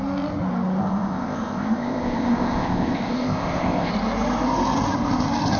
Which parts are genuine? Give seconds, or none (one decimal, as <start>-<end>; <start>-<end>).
0.0-0.8; 3.9-5.6